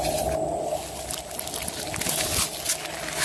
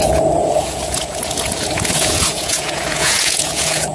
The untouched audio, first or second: first